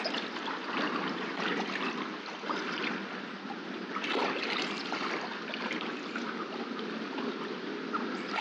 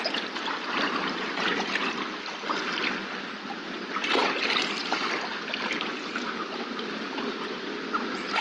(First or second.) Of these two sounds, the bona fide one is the first